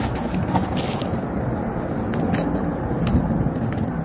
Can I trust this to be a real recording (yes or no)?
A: yes